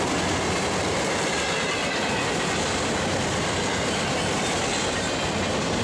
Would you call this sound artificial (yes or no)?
no